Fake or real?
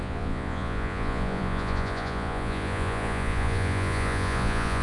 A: fake